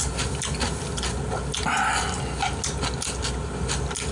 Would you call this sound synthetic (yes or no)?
no